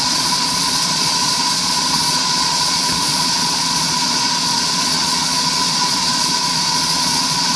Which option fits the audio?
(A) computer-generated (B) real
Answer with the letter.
A